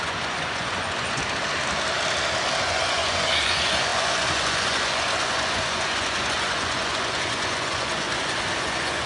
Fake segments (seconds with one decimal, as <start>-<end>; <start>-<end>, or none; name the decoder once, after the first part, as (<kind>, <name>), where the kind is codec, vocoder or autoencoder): 0.0-1.2 (vocoder, Vocos); 2.6-9.1